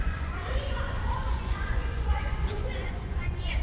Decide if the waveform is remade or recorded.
remade